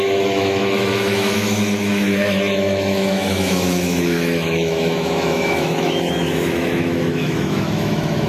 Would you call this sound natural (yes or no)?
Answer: no